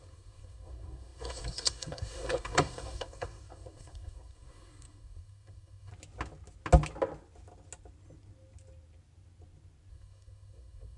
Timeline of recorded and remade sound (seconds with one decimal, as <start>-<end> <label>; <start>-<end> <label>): 0.0-5.9 remade; 5.9-9.9 recorded; 9.9-11.0 remade